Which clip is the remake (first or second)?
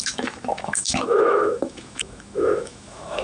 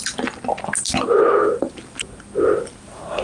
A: first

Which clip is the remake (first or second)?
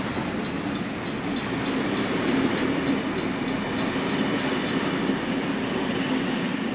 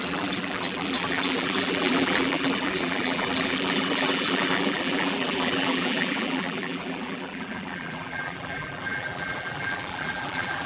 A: second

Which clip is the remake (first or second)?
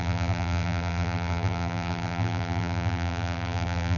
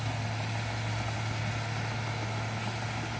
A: first